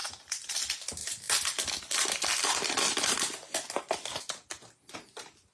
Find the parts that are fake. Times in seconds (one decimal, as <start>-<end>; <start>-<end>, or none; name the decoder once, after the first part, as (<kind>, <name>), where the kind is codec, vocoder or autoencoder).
0.0-0.5 (vocoder, BigVGAN v2); 1.0-4.2